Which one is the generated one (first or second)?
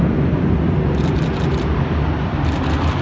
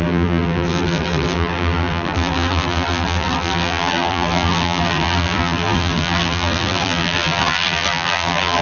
second